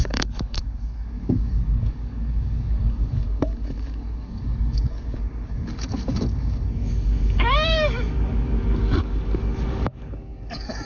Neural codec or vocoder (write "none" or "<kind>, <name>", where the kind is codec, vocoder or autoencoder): codec, DAC